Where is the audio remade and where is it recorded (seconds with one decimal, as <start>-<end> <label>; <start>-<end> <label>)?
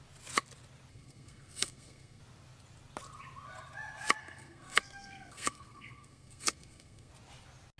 0.0-0.9 recorded; 0.9-2.2 remade; 2.2-4.2 recorded; 4.2-7.1 remade; 7.1-7.8 recorded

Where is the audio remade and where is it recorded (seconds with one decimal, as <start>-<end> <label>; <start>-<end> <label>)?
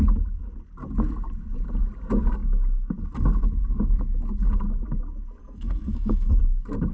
0.0-5.4 recorded; 5.4-6.3 remade; 6.3-6.9 recorded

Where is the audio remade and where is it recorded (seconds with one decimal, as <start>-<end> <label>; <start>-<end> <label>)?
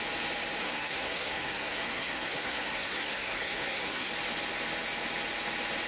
0.0-0.6 recorded; 0.6-4.1 remade; 4.1-5.9 recorded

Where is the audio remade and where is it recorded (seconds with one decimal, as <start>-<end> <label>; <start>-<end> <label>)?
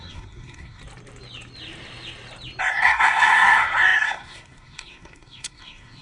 0.0-0.8 remade; 0.8-2.6 recorded; 2.6-6.0 remade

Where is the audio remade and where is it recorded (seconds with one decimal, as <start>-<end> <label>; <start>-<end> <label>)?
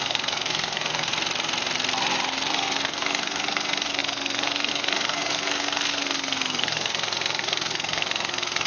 0.0-1.1 remade; 1.1-2.5 recorded; 2.5-8.7 remade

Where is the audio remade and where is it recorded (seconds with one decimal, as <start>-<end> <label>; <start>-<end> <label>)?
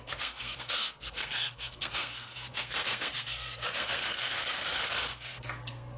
0.0-6.0 remade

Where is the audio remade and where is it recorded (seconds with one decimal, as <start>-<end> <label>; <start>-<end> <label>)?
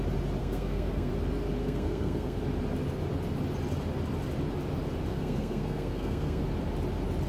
0.0-0.4 recorded; 0.4-1.1 remade; 1.1-1.6 recorded; 1.6-2.4 remade; 2.4-5.1 recorded; 5.1-6.4 remade; 6.4-7.3 recorded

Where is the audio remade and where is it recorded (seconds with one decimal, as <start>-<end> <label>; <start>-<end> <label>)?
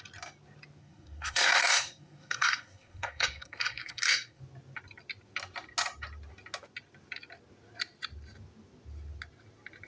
0.0-0.8 recorded; 0.8-4.4 remade; 4.4-9.9 recorded